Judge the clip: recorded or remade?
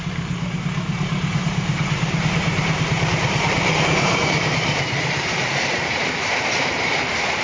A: remade